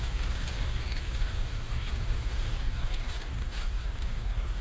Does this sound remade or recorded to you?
remade